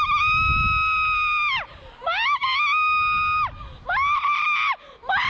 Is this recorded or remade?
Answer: recorded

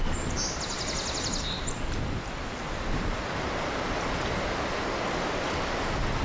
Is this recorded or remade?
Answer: recorded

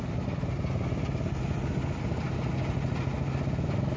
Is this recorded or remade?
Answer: recorded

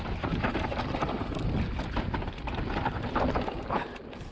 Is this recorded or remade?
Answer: recorded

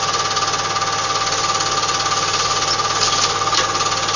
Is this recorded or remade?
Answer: recorded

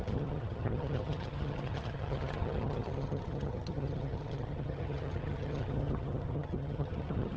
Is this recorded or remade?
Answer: remade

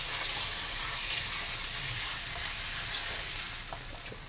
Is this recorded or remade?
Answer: recorded